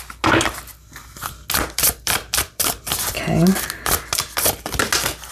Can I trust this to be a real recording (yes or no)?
yes